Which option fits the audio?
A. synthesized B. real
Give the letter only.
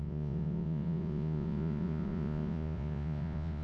A